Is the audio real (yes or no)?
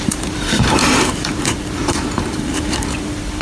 no